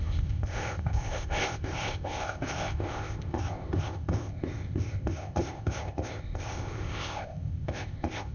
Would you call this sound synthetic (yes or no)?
yes